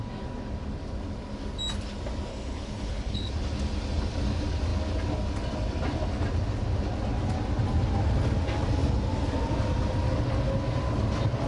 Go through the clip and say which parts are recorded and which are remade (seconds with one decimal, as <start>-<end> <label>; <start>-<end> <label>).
0.0-2.3 recorded; 2.3-3.3 remade; 3.3-11.5 recorded